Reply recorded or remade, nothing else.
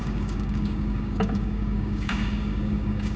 remade